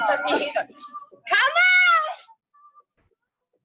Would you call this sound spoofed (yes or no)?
no